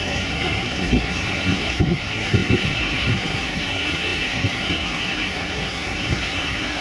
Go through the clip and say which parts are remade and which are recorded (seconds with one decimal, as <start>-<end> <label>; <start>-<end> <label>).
0.0-6.8 remade